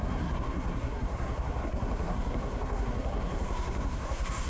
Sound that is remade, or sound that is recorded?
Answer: remade